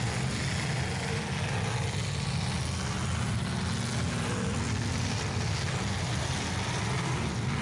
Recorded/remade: recorded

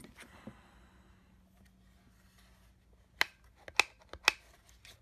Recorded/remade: recorded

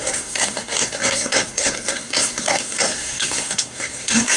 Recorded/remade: remade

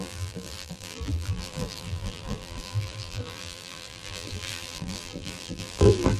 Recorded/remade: remade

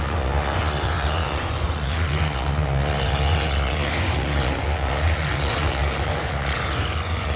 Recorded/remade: remade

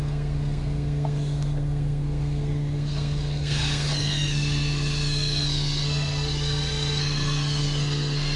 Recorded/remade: remade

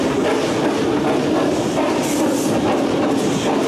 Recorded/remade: recorded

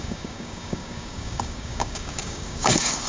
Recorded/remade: remade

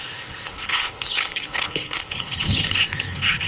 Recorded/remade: remade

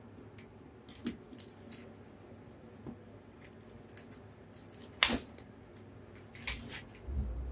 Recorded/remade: recorded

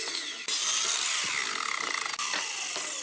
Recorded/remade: recorded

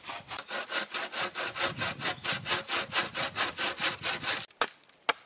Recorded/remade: recorded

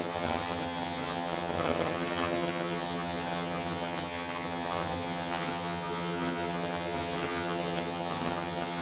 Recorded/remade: remade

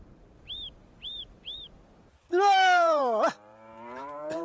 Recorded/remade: remade